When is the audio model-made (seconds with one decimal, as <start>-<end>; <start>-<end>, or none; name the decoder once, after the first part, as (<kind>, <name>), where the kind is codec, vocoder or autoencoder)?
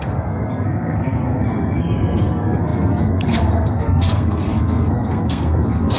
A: 0.0-6.0 (codec, SNAC)